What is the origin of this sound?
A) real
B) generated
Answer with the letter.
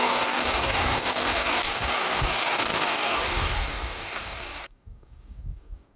B